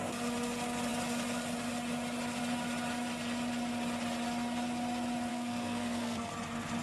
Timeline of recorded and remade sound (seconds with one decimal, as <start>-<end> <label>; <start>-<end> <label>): 0.0-5.3 recorded; 5.3-6.3 remade; 6.3-6.8 recorded